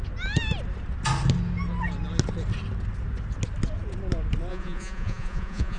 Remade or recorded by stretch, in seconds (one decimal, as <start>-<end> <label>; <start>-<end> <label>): 0.0-4.5 recorded; 4.5-5.8 remade